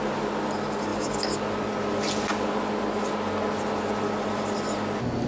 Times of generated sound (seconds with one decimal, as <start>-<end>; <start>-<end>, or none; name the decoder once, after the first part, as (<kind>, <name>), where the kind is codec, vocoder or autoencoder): none